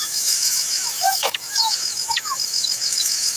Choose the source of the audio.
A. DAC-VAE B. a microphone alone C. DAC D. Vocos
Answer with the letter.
A